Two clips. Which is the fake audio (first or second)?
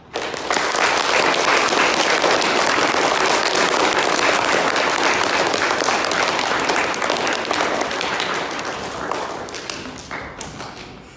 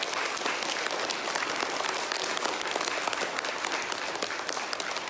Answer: second